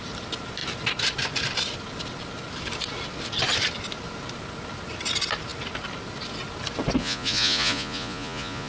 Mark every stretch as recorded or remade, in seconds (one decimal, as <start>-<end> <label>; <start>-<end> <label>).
0.0-7.0 recorded; 7.0-8.7 remade